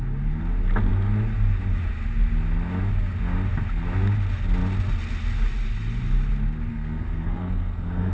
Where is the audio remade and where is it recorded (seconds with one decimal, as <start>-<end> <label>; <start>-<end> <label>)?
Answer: 0.0-6.7 recorded; 6.7-8.1 remade